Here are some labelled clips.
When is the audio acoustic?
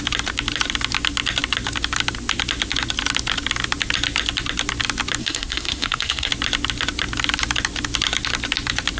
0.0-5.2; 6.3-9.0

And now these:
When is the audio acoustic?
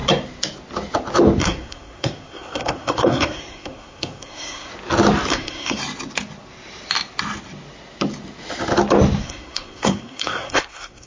0.0-1.4; 4.7-5.3; 5.8-9.2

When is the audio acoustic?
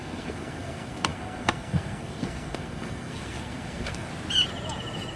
4.1-5.2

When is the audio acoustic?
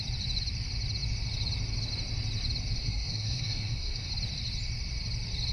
0.0-2.8; 4.1-5.5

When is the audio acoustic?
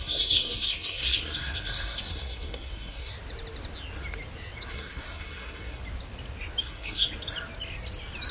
3.1-4.7; 5.8-6.6; 7.1-8.3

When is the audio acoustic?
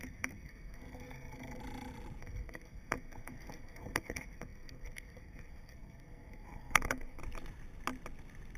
1.6-2.2; 7.2-8.6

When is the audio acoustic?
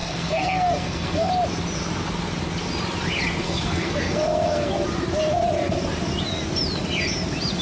1.3-3.4; 4.7-7.6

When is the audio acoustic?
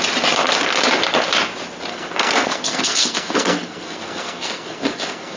0.0-1.9